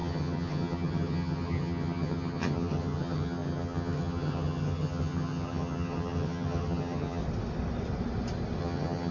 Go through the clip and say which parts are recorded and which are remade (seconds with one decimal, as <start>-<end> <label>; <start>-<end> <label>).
0.0-7.2 remade; 7.2-8.6 recorded; 8.6-9.1 remade